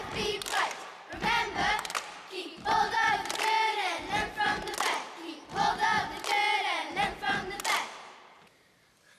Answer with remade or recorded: recorded